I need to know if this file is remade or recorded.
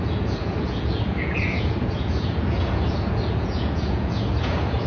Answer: remade